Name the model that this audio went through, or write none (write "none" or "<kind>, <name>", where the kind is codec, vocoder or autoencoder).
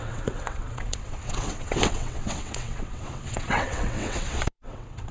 vocoder, WaveNeXt